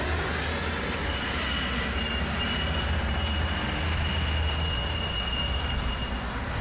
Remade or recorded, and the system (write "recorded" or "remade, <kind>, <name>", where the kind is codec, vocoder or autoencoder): recorded